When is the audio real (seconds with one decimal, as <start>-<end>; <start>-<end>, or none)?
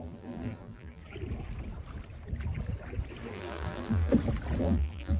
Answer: 1.0-3.3; 4.1-4.6